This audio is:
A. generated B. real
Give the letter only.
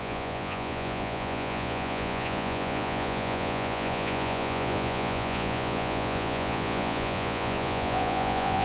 A